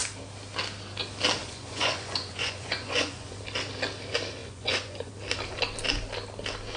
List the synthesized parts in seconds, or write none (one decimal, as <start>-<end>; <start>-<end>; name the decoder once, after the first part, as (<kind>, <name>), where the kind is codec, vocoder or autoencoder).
1.4-3.4 (vocoder, Vocos); 4.4-5.1

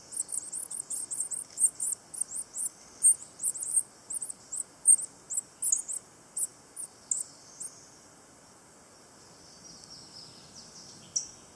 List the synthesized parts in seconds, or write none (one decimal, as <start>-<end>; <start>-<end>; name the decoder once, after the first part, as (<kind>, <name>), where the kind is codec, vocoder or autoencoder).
none

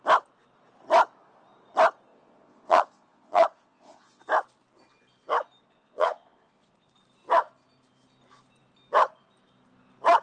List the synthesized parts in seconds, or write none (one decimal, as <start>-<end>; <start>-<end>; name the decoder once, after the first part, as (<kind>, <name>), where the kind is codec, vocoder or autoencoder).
2.1-4.2 (vocoder, Vocos); 5.6-6.9